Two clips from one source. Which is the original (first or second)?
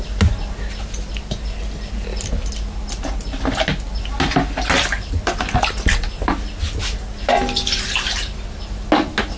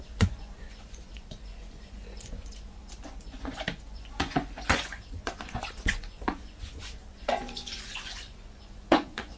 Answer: first